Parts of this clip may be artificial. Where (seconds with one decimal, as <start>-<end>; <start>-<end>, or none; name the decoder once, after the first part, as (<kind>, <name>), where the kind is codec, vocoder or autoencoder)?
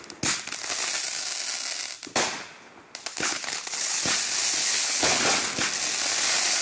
3.1-4.0 (codec, HILCodec); 4.6-5.2